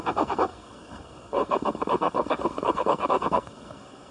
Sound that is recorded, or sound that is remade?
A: remade